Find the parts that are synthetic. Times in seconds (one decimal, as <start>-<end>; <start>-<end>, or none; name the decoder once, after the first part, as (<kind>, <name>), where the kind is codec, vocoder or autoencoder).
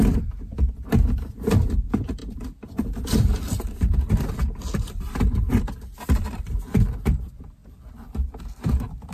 0.0-9.1 (vocoder, BigVGAN v2)